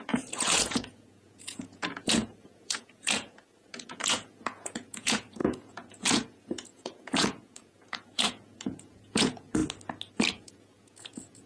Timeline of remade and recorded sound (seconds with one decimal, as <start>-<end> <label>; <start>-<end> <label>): 0.0-9.6 remade; 9.6-10.3 recorded; 10.3-11.5 remade